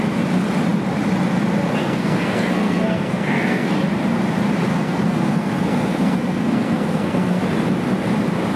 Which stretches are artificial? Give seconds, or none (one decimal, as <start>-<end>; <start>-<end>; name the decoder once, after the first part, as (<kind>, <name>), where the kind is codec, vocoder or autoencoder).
1.8-3.7 (codec, SNAC); 4.7-7.4